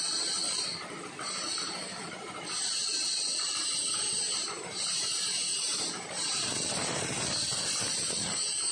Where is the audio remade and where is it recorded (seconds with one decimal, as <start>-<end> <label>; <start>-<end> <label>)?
0.0-0.7 recorded; 0.7-2.6 remade; 2.6-3.6 recorded; 3.6-7.3 remade; 7.3-8.7 recorded